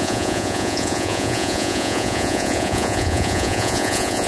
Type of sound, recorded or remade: remade